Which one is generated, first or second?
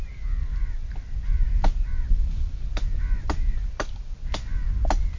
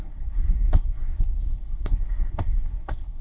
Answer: second